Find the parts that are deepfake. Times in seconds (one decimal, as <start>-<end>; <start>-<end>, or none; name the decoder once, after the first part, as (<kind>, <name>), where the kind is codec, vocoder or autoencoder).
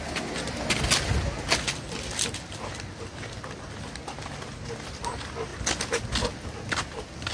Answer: none